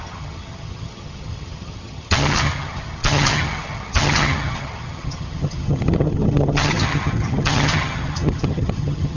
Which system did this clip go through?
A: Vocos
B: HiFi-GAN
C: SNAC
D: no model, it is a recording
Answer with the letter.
B